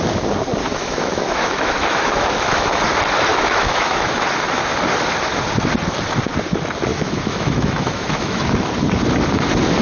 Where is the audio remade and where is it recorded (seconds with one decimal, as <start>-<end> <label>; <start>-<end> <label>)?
0.0-0.7 recorded; 0.7-2.8 remade; 2.8-3.3 recorded; 3.3-4.1 remade; 4.1-6.9 recorded; 6.9-8.5 remade; 8.5-9.8 recorded